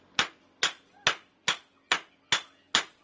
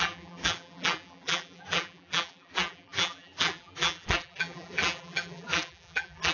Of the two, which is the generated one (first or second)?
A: second